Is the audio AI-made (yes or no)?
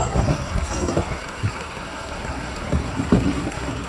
yes